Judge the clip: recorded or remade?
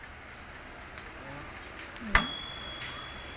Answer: recorded